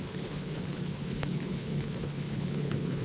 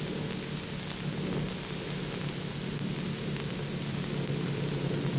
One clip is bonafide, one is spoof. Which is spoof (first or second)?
first